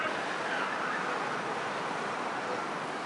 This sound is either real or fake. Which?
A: real